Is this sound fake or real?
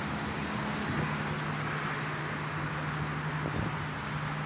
real